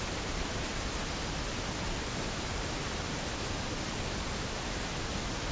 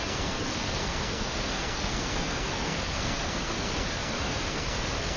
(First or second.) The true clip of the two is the first